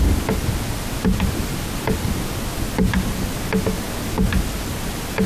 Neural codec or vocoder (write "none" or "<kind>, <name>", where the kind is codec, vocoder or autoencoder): none